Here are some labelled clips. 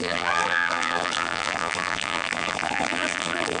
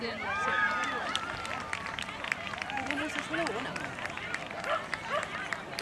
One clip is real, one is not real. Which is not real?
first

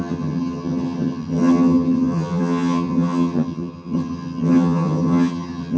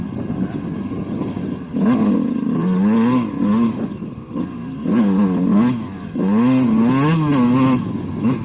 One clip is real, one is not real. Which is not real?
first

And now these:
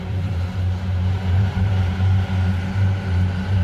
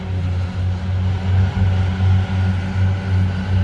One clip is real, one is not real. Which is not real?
first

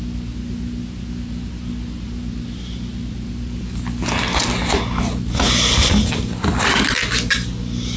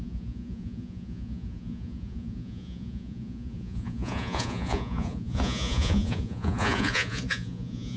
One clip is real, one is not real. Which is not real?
second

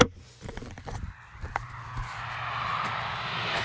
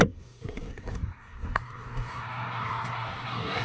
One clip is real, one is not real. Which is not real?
second